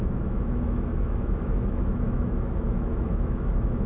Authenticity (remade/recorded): remade